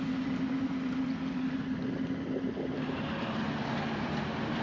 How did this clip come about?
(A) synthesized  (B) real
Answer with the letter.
B